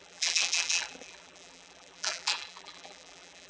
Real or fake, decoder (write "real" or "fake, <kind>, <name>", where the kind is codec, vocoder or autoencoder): fake, vocoder, BigVGAN v2